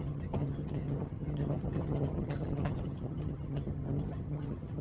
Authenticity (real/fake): fake